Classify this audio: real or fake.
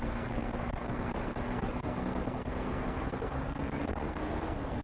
fake